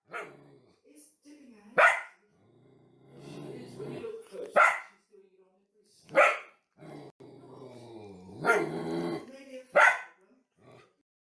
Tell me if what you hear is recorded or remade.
recorded